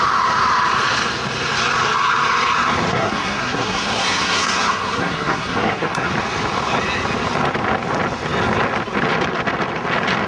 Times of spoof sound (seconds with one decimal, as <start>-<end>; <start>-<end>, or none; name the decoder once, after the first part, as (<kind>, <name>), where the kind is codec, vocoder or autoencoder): 2.9-6.1 (codec, SNAC)